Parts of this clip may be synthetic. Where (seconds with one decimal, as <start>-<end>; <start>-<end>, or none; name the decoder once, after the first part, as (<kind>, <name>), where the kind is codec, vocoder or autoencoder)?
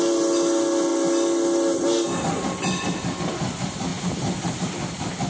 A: none